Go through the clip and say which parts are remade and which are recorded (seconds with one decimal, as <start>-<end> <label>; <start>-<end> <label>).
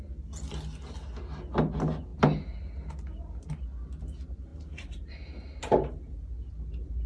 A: 0.0-4.5 recorded; 4.5-5.3 remade; 5.3-7.1 recorded